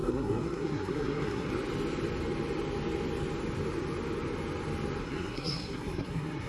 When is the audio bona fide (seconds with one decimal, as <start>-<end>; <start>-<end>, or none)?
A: 1.5-5.0